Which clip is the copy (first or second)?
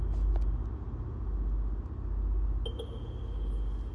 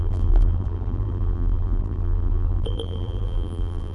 second